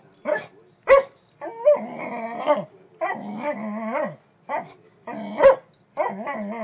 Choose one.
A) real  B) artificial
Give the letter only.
A